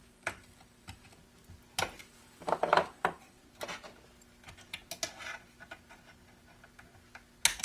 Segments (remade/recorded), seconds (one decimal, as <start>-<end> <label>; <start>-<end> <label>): 0.0-1.2 remade; 1.2-2.0 recorded; 2.0-3.4 remade; 3.4-7.6 recorded